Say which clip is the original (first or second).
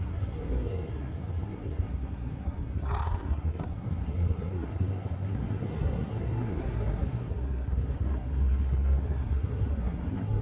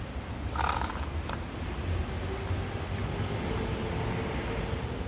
second